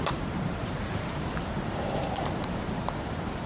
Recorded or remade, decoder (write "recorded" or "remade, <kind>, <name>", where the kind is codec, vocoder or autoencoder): remade, vocoder, BigVGAN v2